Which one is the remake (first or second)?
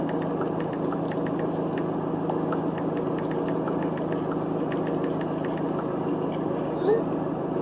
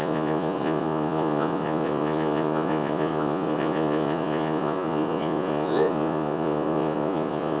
second